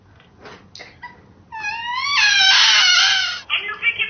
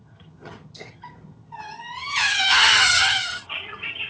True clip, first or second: first